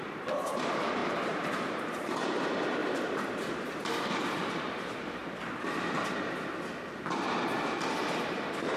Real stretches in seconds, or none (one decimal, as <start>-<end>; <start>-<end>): 2.8-4.2; 5.2-8.0